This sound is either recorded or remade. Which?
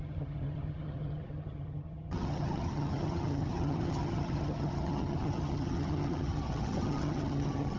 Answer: remade